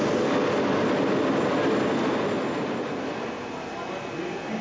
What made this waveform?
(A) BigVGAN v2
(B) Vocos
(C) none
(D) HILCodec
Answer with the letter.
C